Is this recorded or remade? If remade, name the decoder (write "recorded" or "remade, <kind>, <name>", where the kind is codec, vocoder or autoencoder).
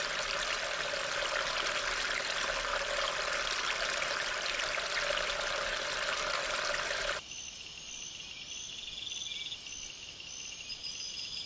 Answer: recorded